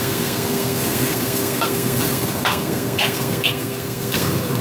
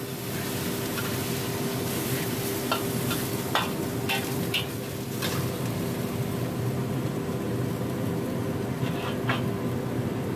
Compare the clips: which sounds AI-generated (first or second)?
first